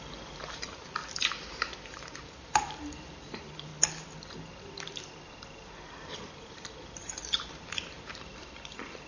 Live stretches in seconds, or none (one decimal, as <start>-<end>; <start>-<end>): 3.7-5.3; 7.2-7.7